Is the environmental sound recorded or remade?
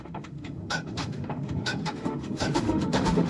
remade